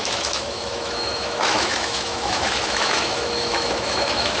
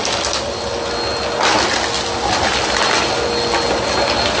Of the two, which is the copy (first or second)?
first